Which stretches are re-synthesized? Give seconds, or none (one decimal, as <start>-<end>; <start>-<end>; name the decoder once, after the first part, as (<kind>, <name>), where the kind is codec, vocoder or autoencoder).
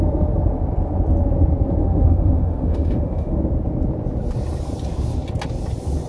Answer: 1.8-3.4 (autoencoder, DAC-VAE)